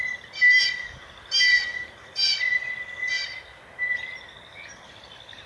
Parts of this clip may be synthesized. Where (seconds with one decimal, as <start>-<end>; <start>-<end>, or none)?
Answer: none